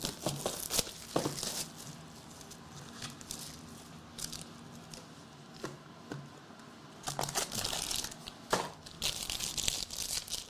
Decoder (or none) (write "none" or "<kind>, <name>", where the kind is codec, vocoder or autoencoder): none